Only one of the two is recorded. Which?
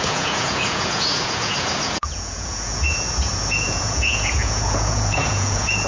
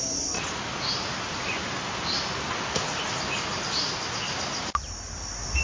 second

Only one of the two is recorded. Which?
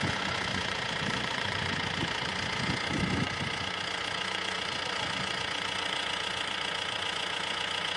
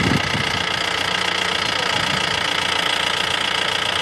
second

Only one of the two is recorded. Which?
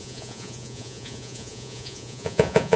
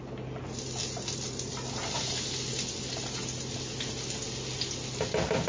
second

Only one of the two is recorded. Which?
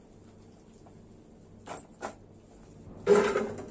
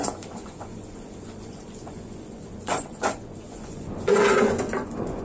first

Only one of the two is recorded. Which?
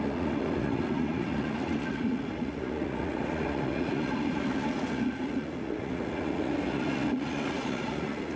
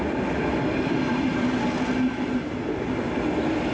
second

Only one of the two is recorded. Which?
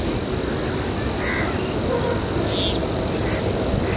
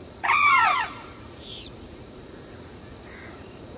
first